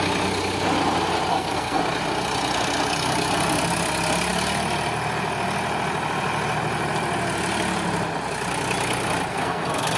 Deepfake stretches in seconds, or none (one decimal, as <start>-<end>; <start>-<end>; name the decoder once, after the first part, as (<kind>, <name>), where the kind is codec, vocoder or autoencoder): 1.3-1.8 (codec, SNAC); 9.3-10.0